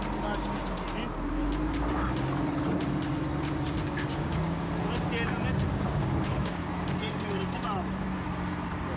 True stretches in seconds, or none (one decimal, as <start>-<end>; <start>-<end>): 0.0-4.1; 4.7-5.7; 6.7-9.0